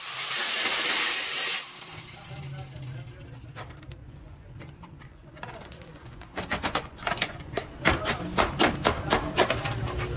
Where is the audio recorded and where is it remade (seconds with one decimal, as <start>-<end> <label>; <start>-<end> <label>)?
0.0-4.0 recorded; 4.0-7.7 remade; 7.7-10.2 recorded

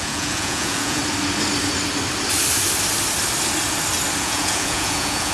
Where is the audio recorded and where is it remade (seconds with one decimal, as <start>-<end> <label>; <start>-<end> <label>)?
0.0-1.0 remade; 1.0-4.2 recorded; 4.2-5.3 remade

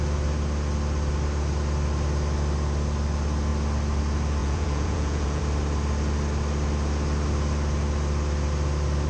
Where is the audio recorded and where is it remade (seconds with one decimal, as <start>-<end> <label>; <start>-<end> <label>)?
0.0-4.4 recorded; 4.4-5.4 remade; 5.4-9.1 recorded